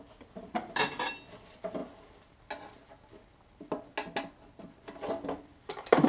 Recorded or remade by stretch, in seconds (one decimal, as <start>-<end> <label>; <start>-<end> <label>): 0.0-6.1 recorded